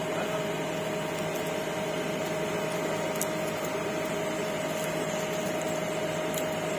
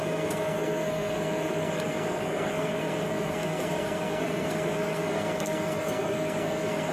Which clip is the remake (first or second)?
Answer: second